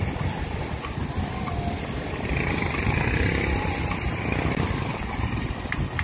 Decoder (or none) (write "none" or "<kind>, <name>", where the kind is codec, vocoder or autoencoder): none